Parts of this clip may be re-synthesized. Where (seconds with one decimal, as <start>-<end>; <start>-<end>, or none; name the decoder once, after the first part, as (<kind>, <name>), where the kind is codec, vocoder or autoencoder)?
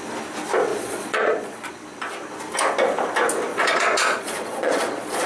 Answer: 0.7-1.7 (vocoder, Vocos); 3.5-5.3